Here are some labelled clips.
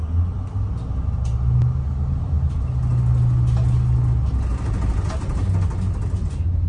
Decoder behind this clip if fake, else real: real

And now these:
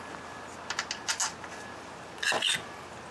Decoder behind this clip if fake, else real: real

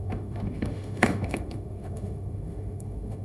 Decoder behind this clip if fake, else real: fake, autoencoder, DAC-VAE